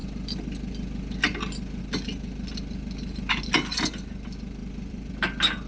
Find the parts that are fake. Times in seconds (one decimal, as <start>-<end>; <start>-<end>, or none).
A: 4.6-5.1